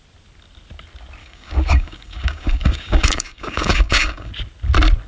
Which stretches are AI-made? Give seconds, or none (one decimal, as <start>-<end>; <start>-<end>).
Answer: 1.2-4.3